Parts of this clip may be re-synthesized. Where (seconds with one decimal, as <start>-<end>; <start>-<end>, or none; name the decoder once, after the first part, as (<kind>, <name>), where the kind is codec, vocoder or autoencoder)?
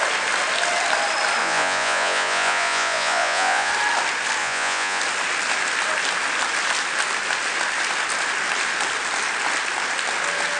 1.4-3.7 (vocoder, Vocos); 4.4-5.0